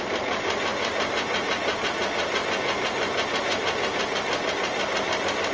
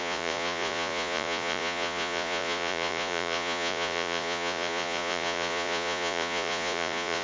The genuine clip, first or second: first